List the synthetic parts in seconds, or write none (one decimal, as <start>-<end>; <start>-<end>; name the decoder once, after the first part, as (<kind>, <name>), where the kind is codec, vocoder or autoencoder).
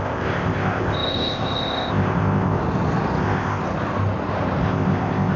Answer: 0.0-2.6 (codec, ZipCodec); 3.2-3.6; 4.6-5.4